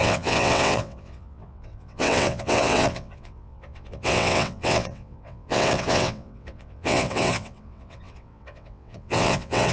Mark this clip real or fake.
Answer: fake